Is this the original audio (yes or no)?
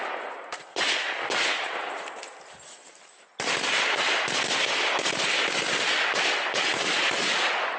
yes